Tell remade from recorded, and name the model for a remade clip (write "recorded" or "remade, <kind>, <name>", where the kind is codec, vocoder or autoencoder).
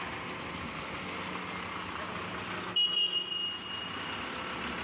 recorded